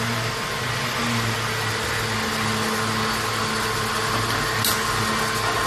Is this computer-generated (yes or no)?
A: no